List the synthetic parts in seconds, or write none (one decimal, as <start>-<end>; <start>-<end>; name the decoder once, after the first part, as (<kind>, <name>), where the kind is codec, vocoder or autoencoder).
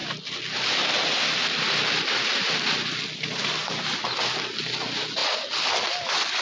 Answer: none